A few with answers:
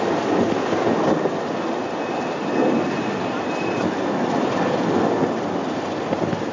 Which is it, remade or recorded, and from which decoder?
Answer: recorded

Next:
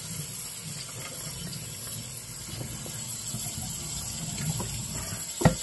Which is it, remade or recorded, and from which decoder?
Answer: recorded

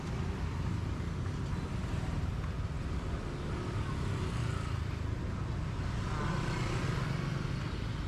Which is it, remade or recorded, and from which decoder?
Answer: recorded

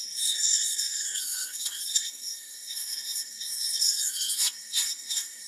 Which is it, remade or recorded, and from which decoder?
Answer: remade, codec, SNAC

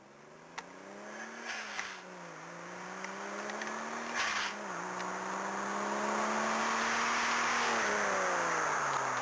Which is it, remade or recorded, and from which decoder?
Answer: recorded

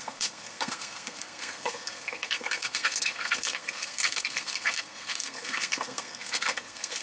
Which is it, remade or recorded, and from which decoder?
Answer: remade, codec, SNAC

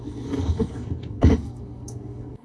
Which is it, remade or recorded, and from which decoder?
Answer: remade, codec, SNAC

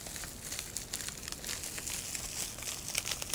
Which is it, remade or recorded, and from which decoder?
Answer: recorded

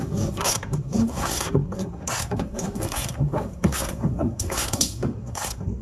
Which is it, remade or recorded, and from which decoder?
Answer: remade, codec, SNAC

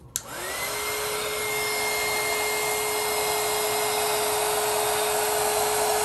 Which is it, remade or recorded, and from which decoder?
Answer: recorded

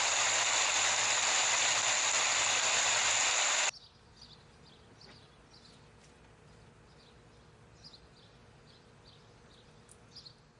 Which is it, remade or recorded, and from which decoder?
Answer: recorded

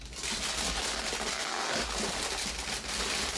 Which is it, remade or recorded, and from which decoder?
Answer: recorded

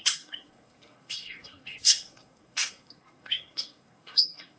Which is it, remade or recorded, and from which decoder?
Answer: remade, codec, SNAC